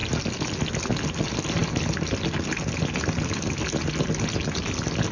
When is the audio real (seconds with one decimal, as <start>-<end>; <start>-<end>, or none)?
0.0-5.1